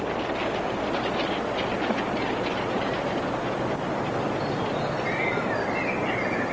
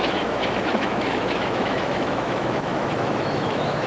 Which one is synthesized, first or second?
second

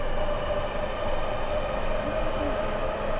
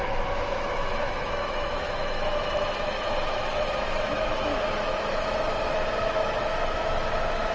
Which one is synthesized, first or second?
second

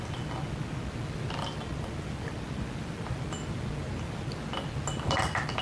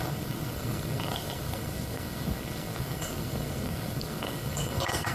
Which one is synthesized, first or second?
second